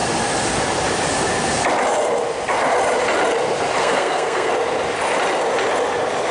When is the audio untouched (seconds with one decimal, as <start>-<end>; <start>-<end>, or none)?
0.0-3.8; 4.5-6.3

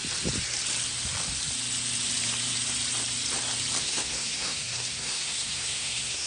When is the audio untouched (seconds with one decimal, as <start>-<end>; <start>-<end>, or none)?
0.0-3.8

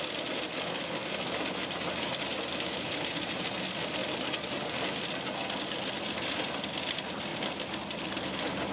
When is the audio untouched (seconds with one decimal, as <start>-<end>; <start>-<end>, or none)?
0.0-8.7

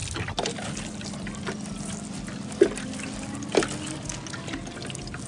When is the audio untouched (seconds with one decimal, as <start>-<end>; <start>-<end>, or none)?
0.0-5.3

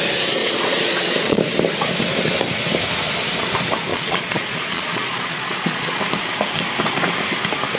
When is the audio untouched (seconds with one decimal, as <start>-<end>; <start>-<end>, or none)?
0.0-0.4; 1.4-3.9; 6.0-7.8